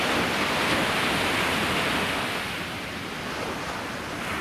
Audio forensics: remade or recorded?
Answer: recorded